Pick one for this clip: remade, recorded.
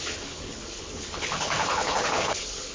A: remade